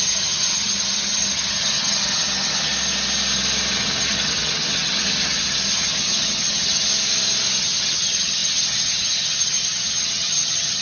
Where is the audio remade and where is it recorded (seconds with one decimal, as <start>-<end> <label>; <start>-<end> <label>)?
0.0-2.7 remade; 2.7-3.7 recorded; 3.7-6.9 remade; 6.9-7.6 recorded; 7.6-10.8 remade